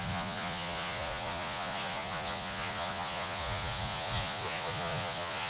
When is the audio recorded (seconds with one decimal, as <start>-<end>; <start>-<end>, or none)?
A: none